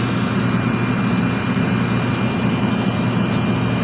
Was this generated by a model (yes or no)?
no